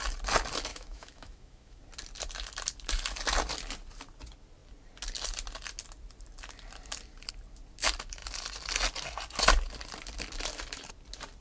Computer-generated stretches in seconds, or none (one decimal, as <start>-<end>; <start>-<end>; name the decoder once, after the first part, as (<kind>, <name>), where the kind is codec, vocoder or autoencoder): 0.7-1.8 (autoencoder, DAC-VAE)